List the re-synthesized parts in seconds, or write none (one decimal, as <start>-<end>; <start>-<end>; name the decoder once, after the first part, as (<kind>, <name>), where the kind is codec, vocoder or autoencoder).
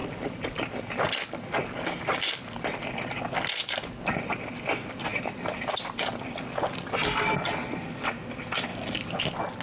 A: 5.1-6.3 (vocoder, BigVGAN v2); 8.7-9.2